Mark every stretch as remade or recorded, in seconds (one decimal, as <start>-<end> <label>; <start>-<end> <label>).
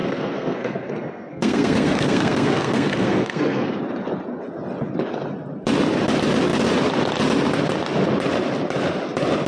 0.0-3.8 remade; 3.8-9.5 recorded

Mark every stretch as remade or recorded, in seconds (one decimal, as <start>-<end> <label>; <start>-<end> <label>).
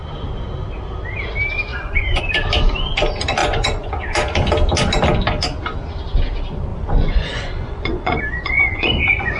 0.0-1.7 recorded; 1.7-2.2 remade; 2.2-3.4 recorded; 3.4-3.9 remade; 3.9-6.7 recorded; 6.7-9.4 remade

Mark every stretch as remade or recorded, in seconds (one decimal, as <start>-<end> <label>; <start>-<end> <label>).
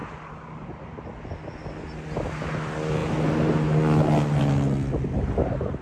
0.0-5.8 recorded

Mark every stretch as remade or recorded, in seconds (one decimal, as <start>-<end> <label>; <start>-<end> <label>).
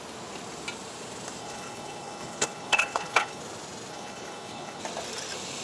0.0-1.4 recorded; 1.4-3.4 remade; 3.4-3.9 recorded; 3.9-4.8 remade; 4.8-5.6 recorded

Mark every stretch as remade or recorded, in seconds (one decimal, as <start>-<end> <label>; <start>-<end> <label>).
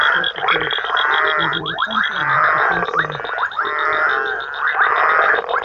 0.0-2.2 remade; 2.2-5.1 recorded; 5.1-5.6 remade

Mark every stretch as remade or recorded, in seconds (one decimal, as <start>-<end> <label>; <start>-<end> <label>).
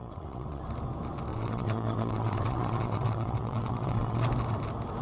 0.0-0.6 remade; 0.6-1.3 recorded; 1.3-4.3 remade; 4.3-5.0 recorded